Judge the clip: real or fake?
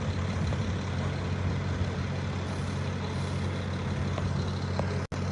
real